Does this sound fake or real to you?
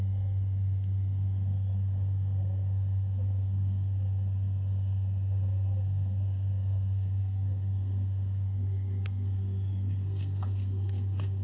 fake